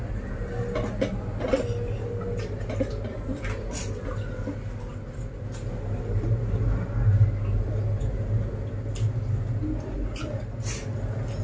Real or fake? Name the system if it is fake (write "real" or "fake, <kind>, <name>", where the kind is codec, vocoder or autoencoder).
real